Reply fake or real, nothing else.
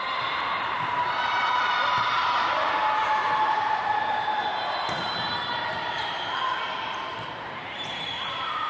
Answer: fake